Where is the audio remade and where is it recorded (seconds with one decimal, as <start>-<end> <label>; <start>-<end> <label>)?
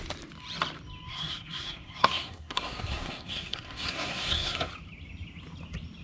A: 0.0-1.1 recorded; 1.1-4.7 remade; 4.7-6.0 recorded